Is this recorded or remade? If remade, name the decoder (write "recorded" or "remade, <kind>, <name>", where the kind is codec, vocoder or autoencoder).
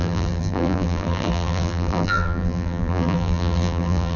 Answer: remade, vocoder, BigVGAN v2